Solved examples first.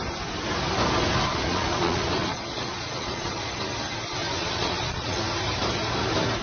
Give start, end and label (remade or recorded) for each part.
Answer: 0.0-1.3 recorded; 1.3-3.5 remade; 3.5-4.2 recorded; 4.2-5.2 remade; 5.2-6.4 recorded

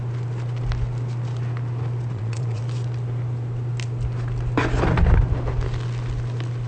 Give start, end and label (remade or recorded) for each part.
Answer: 0.0-2.1 recorded; 2.1-2.6 remade; 2.6-6.7 recorded

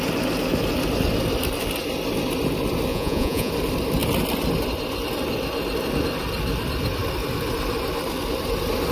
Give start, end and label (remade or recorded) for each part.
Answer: 0.0-2.9 recorded; 2.9-3.5 remade; 3.5-8.9 recorded

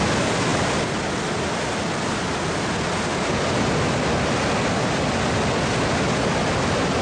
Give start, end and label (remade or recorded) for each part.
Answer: 0.0-7.0 recorded

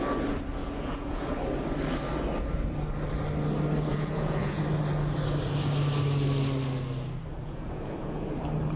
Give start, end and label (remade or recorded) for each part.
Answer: 0.0-0.6 recorded; 0.6-1.3 remade; 1.3-3.9 recorded; 3.9-4.6 remade; 4.6-7.3 recorded; 7.3-8.4 remade; 8.4-8.8 recorded